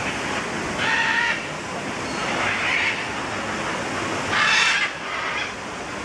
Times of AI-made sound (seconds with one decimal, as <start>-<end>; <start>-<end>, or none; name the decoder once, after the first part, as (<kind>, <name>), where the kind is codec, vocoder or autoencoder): 2.2-3.3 (vocoder, BigVGAN v2)